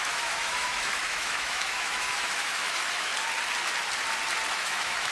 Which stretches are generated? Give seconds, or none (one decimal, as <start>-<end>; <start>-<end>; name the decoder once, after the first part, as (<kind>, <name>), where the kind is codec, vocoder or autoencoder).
0.0-3.1 (autoencoder, DAC-VAE); 4.5-5.1